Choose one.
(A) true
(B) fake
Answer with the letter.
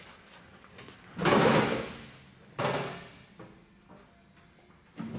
A